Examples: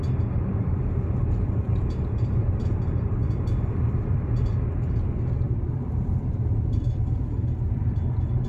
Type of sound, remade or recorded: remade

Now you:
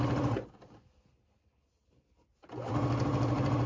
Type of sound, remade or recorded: recorded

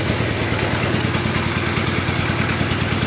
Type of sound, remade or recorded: recorded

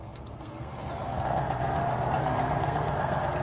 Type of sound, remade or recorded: remade